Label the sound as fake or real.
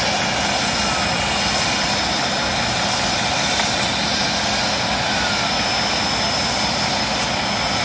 real